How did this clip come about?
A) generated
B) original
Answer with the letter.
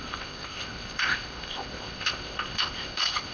A